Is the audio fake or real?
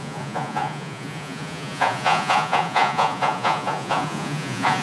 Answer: fake